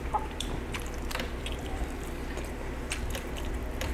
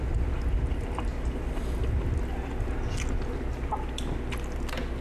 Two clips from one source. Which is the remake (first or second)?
first